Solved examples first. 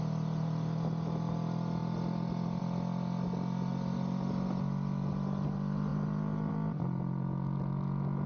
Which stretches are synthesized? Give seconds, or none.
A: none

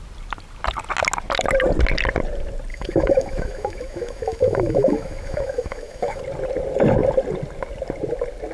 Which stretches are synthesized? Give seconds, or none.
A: 2.7-6.2 (autoencoder, DAC-VAE)